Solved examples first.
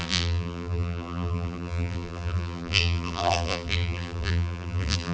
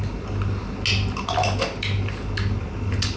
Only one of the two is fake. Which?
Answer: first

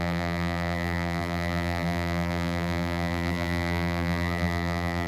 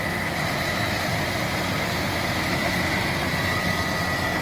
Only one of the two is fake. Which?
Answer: first